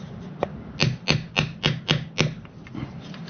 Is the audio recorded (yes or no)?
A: yes